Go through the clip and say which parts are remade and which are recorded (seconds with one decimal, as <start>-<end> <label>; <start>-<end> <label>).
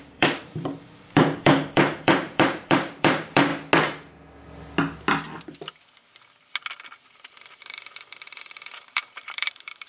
0.0-3.5 remade; 3.5-7.3 recorded; 7.3-9.9 remade